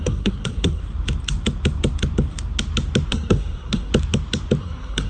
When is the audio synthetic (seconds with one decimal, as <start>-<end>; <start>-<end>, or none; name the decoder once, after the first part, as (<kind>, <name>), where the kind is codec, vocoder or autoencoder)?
0.0-0.8 (codec, SNAC); 3.1-3.9; 4.6-5.1

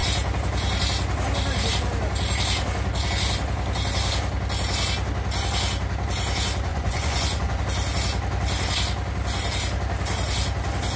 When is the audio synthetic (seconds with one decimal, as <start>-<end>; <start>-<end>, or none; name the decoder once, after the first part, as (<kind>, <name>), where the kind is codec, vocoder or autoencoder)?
6.7-7.6 (vocoder, Vocos)